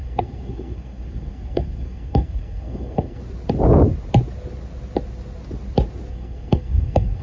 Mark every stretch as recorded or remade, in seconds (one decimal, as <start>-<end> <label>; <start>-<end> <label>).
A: 0.0-3.2 remade; 3.2-6.1 recorded; 6.1-7.2 remade